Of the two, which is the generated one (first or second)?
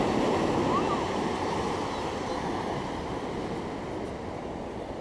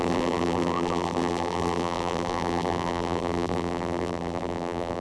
second